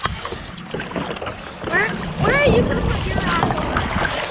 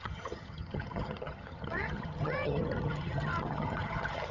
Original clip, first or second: first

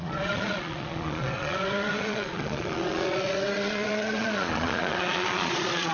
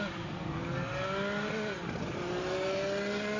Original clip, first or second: second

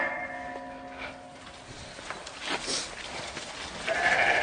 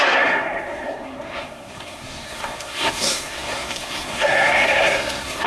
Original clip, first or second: first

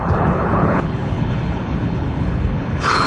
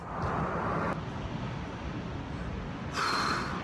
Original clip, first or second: second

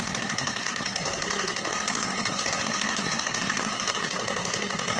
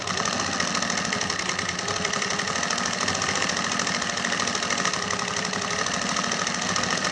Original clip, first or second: second